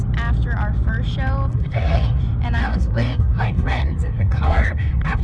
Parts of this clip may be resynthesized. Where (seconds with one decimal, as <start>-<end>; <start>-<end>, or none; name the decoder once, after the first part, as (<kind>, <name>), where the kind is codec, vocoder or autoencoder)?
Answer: 1.5-2.2 (codec, SNAC); 2.6-5.2